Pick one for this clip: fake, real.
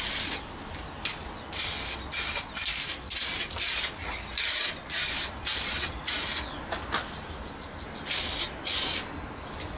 real